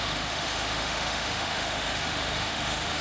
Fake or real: fake